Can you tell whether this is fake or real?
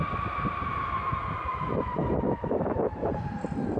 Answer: real